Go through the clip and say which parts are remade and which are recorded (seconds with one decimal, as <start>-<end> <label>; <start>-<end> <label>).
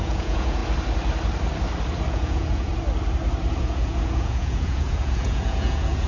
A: 0.0-0.6 remade; 0.6-2.1 recorded; 2.1-2.7 remade; 2.7-3.5 recorded; 3.5-6.1 remade